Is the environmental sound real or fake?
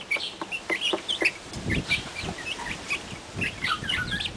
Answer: real